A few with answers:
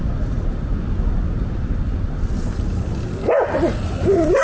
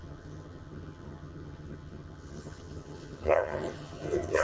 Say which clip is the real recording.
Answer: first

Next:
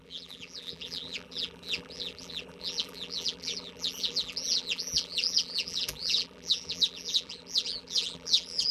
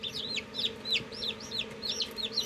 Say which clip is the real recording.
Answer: second